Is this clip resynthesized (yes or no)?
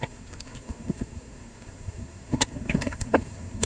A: yes